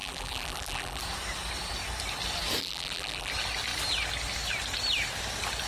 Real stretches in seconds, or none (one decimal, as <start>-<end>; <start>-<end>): 1.0-2.6; 3.3-5.7